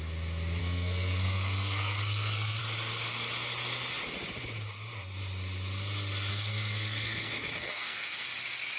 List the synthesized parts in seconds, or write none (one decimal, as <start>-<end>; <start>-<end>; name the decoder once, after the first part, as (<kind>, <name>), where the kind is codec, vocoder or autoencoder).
0.6-2.6 (codec, SNAC); 6.3-8.2